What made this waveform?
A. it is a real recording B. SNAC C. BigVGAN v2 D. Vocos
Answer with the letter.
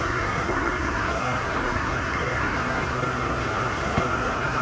B